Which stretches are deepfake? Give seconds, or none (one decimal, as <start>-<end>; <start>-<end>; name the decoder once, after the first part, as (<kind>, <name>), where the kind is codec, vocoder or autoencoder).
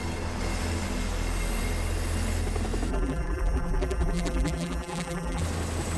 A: 2.9-5.4 (vocoder, BigVGAN v2)